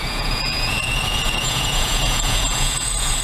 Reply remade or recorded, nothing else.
remade